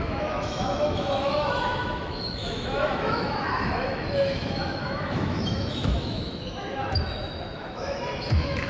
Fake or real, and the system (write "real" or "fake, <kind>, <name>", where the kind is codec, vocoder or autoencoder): fake, autoencoder, DAC-VAE